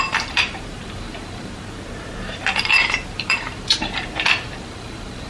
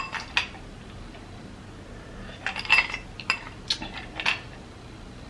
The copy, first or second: first